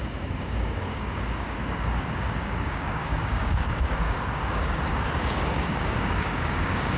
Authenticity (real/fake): fake